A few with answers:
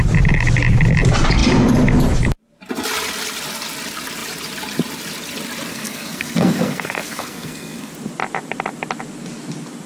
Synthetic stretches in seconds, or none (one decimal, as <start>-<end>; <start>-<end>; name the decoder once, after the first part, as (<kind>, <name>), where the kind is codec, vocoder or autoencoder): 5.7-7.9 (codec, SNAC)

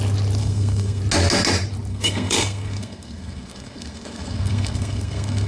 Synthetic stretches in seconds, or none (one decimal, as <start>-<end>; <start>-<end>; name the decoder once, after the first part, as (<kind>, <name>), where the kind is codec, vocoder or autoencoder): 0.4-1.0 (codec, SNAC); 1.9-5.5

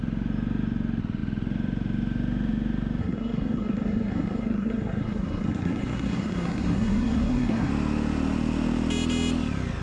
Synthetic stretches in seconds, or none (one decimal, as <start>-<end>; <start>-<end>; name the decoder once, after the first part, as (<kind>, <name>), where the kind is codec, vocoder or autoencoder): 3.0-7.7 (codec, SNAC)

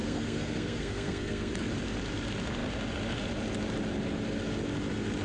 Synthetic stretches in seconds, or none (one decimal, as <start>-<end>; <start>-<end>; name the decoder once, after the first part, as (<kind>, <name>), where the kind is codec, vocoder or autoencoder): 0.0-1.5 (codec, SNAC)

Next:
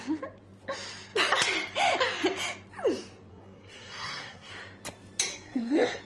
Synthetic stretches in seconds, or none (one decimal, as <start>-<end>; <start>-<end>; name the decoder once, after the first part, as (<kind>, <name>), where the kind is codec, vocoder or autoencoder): 3.3-4.5 (codec, SNAC); 5.3-6.0

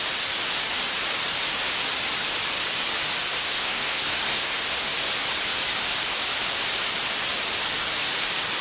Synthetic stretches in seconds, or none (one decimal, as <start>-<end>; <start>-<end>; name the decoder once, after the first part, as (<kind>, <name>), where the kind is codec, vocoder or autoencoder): 3.3-5.1 (codec, SNAC)

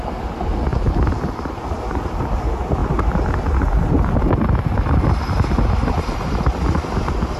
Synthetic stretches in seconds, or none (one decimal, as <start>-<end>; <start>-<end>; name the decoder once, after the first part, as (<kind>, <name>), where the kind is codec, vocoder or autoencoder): none

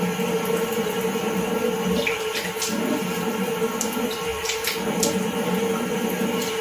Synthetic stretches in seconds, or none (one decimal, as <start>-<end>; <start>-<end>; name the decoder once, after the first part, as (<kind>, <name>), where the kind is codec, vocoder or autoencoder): none